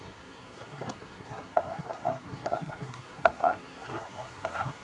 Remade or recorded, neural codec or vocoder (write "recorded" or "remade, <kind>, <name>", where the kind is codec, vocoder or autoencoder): remade, codec, SNAC